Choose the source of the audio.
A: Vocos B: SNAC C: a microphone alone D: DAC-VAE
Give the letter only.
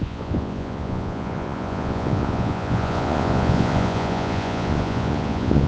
A